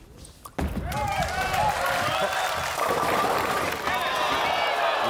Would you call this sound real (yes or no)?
yes